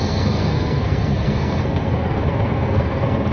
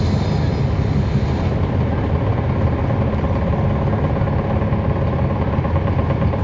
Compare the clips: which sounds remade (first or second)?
first